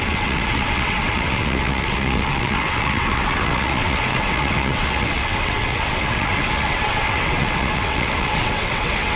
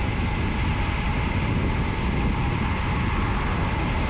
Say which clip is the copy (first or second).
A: first